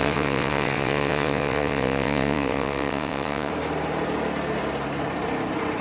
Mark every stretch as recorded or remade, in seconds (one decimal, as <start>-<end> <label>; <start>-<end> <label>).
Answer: 0.0-3.5 remade; 3.5-5.8 recorded